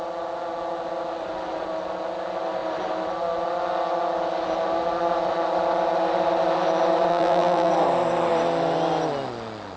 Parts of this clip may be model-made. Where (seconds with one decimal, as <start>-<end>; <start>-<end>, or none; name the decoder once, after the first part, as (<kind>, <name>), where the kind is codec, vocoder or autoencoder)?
7.1-7.7 (vocoder, BigVGAN v2)